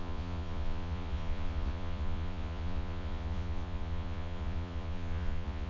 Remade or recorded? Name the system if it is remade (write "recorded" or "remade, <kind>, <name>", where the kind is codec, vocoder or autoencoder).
remade, vocoder, Vocos